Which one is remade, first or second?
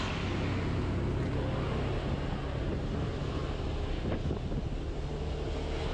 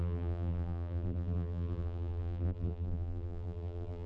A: second